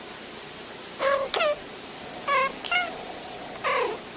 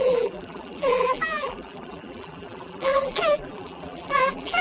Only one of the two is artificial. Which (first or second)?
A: second